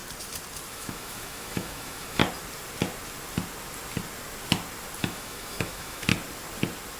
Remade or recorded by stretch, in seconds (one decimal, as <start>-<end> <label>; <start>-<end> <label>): 0.0-0.7 recorded; 0.7-2.2 remade; 2.2-5.0 recorded; 5.0-6.1 remade; 6.1-7.0 recorded